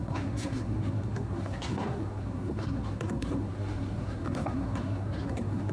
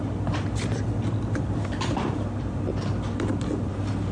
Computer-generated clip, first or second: first